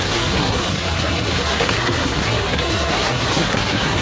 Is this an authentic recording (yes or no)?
no